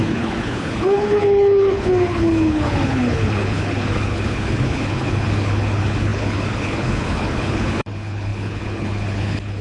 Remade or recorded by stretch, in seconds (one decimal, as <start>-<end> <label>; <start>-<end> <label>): 0.0-9.6 remade